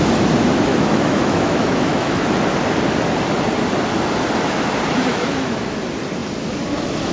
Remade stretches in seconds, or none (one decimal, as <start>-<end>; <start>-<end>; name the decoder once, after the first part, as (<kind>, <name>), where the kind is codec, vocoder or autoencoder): 0.7-2.3 (autoencoder, DAC-VAE); 5.1-5.8